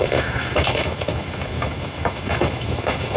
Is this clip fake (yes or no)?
yes